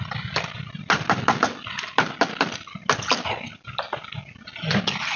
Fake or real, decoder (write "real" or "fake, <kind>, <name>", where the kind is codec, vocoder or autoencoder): real